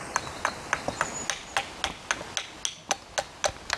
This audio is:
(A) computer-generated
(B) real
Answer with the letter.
B